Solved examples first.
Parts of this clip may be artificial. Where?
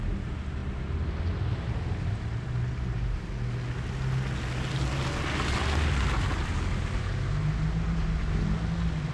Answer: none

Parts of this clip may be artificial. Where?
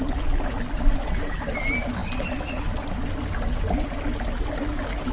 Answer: none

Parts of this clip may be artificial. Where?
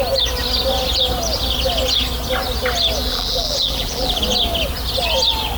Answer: 3.1-4.2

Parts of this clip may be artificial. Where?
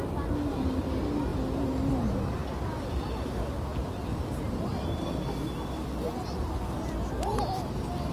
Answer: none